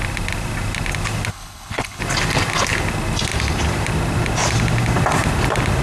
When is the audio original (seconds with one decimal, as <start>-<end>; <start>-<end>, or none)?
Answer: 0.0-1.3; 2.0-5.8